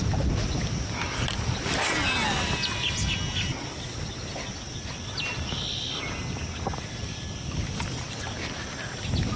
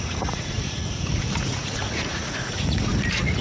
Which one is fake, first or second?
second